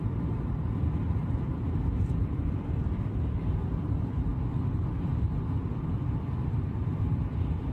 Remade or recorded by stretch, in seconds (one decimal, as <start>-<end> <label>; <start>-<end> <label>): 0.0-5.1 remade; 5.1-5.9 recorded; 5.9-7.7 remade